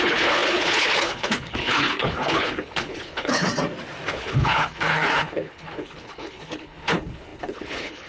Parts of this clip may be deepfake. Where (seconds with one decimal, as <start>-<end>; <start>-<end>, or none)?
0.0-3.5; 4.1-8.1